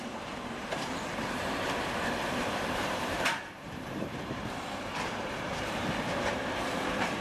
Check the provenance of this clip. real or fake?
fake